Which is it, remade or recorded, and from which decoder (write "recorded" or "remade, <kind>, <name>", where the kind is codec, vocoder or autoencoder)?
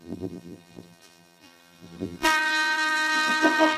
remade, vocoder, BigVGAN v2